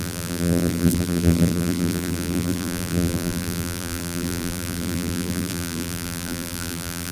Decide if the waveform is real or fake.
fake